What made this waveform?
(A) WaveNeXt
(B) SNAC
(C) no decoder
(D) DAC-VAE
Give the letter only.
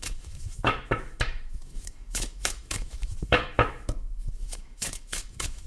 D